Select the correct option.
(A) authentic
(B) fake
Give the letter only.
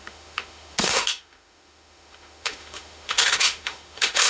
B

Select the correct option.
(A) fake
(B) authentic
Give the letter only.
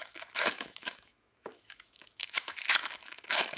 A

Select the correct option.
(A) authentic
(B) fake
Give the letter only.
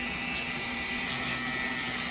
A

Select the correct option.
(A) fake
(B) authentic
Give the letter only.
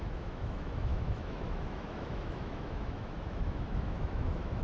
A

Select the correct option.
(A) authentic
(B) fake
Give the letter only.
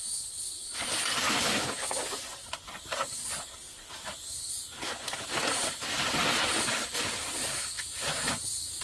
A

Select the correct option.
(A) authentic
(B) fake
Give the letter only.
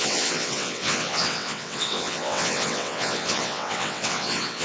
B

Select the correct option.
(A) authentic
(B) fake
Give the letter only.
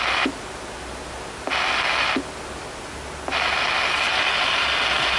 A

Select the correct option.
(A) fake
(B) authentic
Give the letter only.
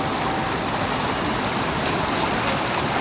B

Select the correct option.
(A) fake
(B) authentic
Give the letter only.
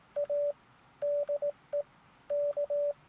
B